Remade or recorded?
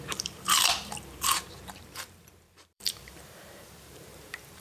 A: remade